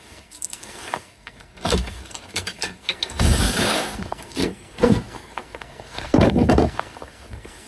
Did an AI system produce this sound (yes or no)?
yes